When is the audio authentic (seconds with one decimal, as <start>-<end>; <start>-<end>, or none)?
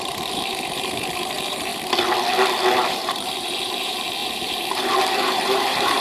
1.7-2.9